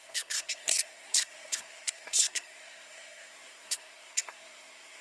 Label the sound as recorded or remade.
remade